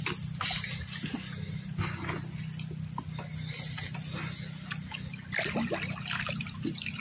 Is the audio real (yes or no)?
yes